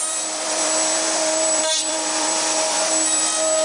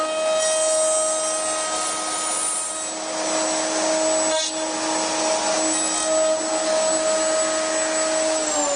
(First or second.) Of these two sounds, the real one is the second